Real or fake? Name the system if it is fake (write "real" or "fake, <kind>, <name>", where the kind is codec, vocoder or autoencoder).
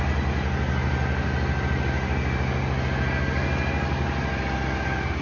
real